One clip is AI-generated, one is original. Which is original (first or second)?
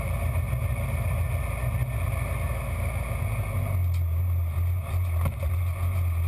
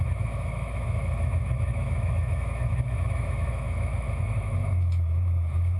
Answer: first